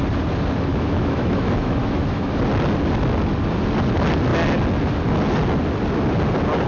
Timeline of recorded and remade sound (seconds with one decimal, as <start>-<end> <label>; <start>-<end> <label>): 0.0-0.7 recorded; 0.7-2.3 remade; 2.3-6.7 recorded